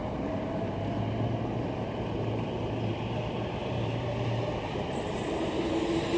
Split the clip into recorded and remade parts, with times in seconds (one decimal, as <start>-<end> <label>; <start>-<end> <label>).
0.0-3.6 recorded; 3.6-5.7 remade; 5.7-6.2 recorded

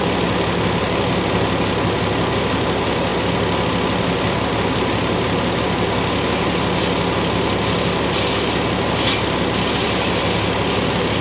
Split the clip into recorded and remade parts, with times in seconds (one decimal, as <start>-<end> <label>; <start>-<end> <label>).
0.0-11.2 recorded

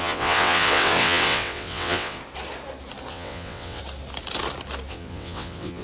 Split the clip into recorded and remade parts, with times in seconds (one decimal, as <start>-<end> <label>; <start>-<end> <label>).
0.0-2.2 remade; 2.2-3.1 recorded; 3.1-3.8 remade; 3.8-4.9 recorded; 4.9-5.8 remade

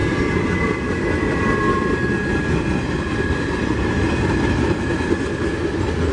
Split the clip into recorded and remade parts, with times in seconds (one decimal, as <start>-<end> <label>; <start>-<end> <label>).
0.0-6.1 recorded